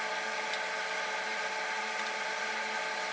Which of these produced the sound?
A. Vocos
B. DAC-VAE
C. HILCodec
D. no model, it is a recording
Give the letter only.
D